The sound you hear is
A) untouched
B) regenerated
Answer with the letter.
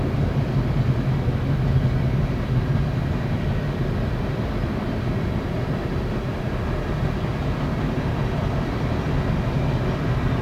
A